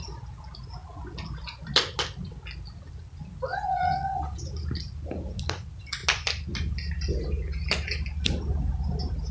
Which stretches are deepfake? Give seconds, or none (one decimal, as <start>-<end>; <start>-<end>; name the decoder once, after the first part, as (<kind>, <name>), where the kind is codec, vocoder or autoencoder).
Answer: 3.5-4.4 (vocoder, WaveNeXt)